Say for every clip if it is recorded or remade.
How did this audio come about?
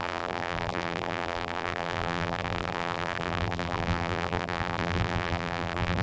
remade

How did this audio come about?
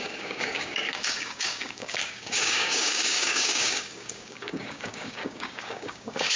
remade